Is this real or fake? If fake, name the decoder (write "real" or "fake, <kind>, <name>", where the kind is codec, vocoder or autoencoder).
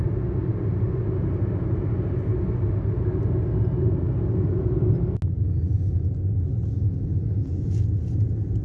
real